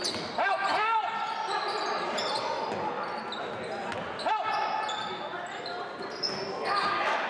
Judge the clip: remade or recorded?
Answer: recorded